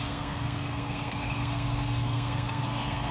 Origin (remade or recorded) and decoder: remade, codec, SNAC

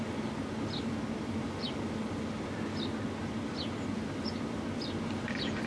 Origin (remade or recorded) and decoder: recorded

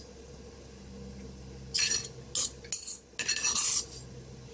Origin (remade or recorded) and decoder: recorded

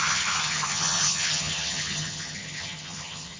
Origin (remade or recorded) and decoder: remade, vocoder, HiFi-GAN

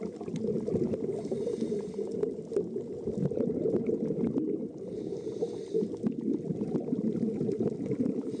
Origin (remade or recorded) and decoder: recorded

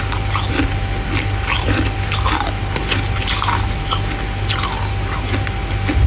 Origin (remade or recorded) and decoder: recorded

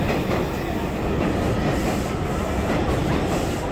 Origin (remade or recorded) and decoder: recorded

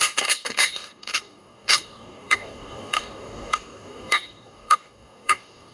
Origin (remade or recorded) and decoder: remade, codec, DAC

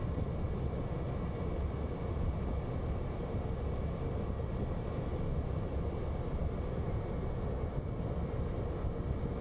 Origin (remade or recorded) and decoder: recorded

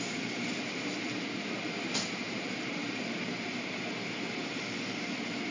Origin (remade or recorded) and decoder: remade, vocoder, BigVGAN v2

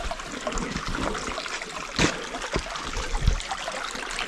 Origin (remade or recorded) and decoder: recorded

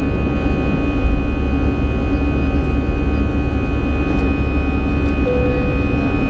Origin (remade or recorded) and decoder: recorded